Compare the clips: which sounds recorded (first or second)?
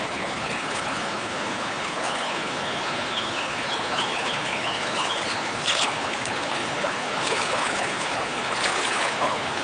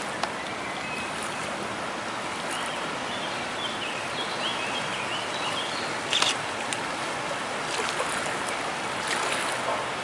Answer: second